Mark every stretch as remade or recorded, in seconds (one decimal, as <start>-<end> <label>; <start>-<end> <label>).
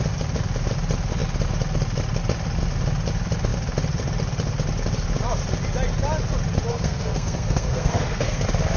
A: 0.0-6.7 recorded; 6.7-8.4 remade; 8.4-8.8 recorded